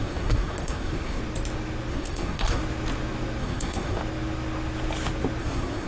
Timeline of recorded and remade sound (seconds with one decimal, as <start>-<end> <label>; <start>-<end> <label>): 0.0-1.2 remade; 1.2-1.9 recorded; 1.9-2.6 remade; 2.6-3.4 recorded; 3.4-4.0 remade; 4.0-5.4 recorded; 5.4-5.9 remade